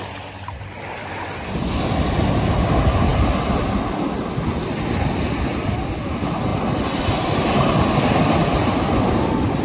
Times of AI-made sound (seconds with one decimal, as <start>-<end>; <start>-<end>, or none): none